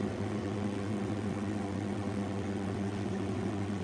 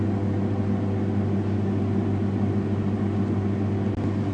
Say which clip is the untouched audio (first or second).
second